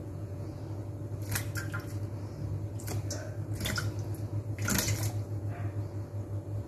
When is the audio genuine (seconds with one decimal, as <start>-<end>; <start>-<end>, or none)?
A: 0.6-6.7